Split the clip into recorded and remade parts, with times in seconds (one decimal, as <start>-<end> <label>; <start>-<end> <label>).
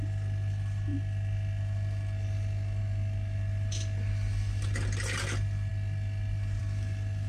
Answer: 0.0-7.3 recorded